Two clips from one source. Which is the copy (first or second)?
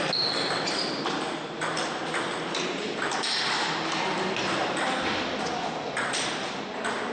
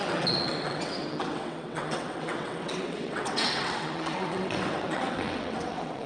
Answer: second